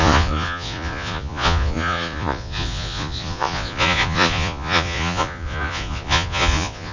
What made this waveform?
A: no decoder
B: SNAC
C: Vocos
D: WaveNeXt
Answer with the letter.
C